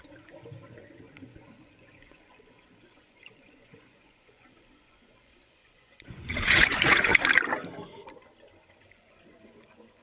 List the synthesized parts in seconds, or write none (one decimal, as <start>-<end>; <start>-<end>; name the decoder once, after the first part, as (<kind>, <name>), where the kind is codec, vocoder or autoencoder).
0.0-7.1 (vocoder, Vocos); 8.9-10.0